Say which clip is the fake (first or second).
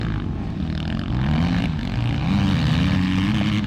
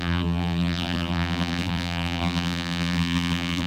second